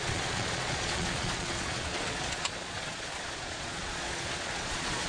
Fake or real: fake